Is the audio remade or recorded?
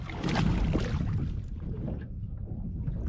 recorded